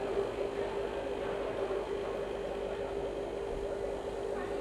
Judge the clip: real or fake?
real